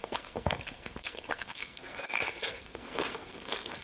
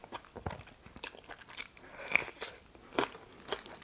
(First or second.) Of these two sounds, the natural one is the second